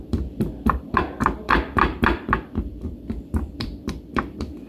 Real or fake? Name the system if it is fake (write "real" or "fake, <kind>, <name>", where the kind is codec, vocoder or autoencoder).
fake, vocoder, BigVGAN v2